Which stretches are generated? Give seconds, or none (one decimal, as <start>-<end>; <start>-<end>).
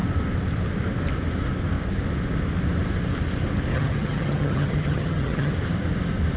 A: 3.7-5.5